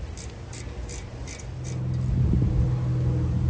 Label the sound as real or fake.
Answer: real